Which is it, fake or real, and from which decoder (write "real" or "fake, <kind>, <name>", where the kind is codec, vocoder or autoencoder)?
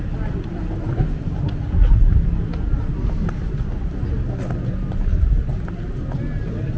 real